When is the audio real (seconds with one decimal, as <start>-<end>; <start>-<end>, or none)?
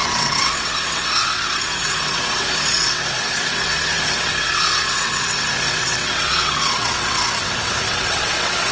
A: none